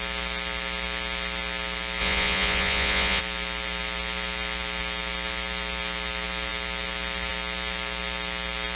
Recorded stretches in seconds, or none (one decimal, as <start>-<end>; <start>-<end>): 0.0-2.0; 3.2-8.8